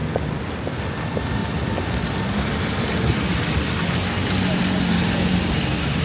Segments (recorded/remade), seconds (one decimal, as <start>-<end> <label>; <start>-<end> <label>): 0.0-6.0 recorded